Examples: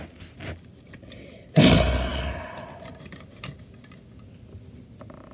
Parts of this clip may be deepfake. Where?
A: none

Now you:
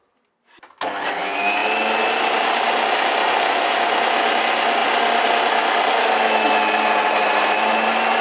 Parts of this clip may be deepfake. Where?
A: none

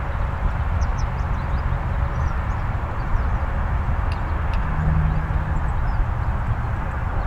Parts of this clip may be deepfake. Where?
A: 0.0-0.9 (vocoder, BigVGAN v2); 2.4-3.1; 6.8-7.3

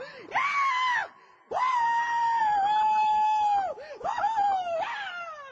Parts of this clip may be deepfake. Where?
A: none

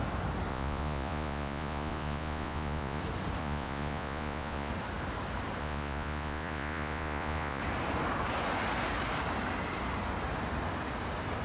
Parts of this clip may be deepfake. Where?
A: 0.5-3.0 (vocoder, Vocos); 3.4-4.7; 5.6-7.6